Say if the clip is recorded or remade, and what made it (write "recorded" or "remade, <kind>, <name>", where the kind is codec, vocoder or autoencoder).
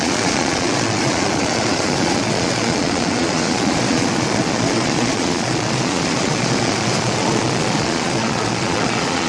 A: remade, vocoder, Vocos